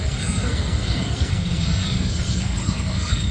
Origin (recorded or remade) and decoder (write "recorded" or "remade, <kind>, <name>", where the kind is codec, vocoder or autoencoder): remade, codec, SNAC